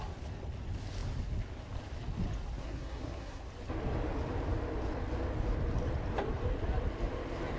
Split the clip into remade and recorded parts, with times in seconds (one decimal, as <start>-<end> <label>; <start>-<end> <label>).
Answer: 0.0-2.6 recorded; 2.6-3.4 remade; 3.4-7.6 recorded